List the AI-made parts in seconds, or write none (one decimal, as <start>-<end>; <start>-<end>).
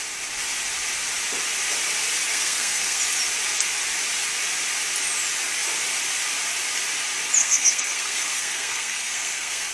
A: 2.3-3.0; 7.4-9.7